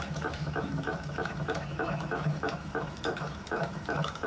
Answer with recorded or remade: remade